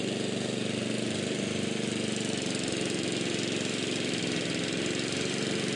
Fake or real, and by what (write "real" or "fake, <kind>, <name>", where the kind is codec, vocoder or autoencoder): real